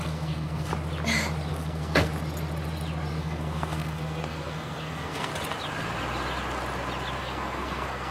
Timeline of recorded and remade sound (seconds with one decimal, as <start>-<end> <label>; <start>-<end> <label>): 0.0-0.7 remade; 0.7-1.5 recorded; 1.5-2.1 remade; 2.1-3.2 recorded; 3.2-5.3 remade; 5.3-7.2 recorded; 7.2-8.1 remade